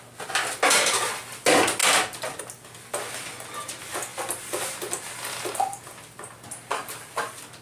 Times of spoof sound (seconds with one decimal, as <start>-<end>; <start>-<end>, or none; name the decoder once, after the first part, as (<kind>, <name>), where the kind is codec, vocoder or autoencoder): none